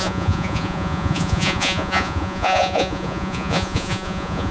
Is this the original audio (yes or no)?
no